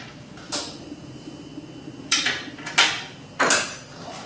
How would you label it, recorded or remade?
recorded